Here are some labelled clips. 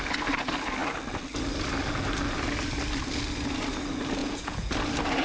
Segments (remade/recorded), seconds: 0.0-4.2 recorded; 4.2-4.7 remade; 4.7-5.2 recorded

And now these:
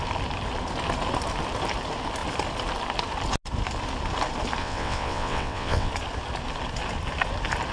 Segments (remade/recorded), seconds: 0.0-4.6 recorded; 4.6-5.9 remade; 5.9-7.7 recorded

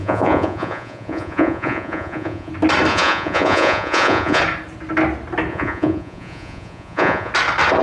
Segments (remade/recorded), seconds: 0.0-2.5 remade; 2.5-2.9 recorded; 2.9-4.4 remade; 4.4-5.5 recorded; 5.5-7.3 remade; 7.3-7.8 recorded

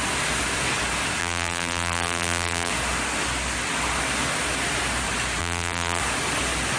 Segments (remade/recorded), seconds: 0.0-1.2 recorded; 1.2-2.7 remade; 2.7-5.4 recorded; 5.4-6.0 remade; 6.0-6.8 recorded

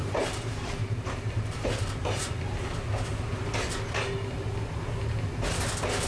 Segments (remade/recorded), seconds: 0.0-2.2 remade; 2.2-3.1 recorded; 3.1-3.7 remade; 3.7-6.1 recorded

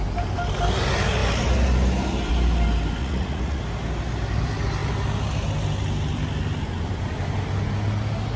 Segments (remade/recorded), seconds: 0.0-3.0 recorded; 3.0-3.6 remade; 3.6-8.4 recorded

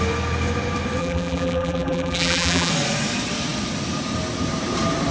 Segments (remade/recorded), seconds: 0.0-1.0 recorded; 1.0-2.7 remade; 2.7-5.1 recorded

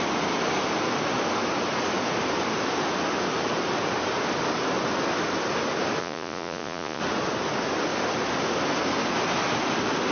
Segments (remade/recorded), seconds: 0.0-6.0 recorded; 6.0-7.0 remade; 7.0-10.1 recorded